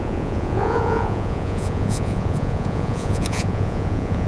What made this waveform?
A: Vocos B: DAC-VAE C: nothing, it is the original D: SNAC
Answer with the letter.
A